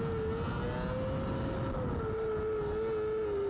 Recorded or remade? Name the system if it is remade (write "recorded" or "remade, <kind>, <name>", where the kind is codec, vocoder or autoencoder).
recorded